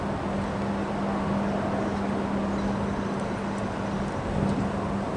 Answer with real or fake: real